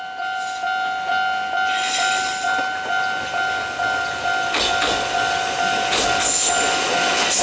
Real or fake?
real